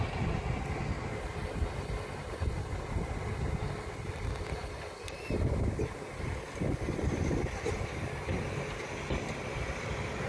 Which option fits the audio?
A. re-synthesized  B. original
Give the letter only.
B